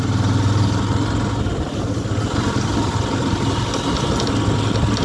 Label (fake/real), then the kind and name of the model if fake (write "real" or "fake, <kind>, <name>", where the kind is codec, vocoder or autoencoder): real